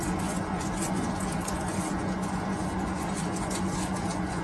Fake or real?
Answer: fake